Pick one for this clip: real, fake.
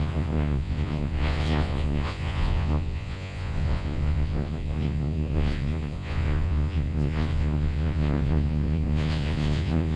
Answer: fake